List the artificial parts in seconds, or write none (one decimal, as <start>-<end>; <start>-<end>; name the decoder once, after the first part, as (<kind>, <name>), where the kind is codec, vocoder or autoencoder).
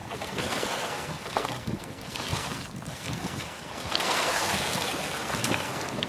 0.0-6.1 (codec, SNAC)